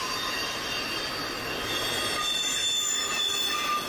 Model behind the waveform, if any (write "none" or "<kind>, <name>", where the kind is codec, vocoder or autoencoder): none